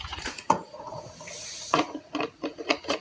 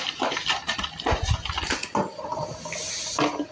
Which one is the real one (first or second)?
second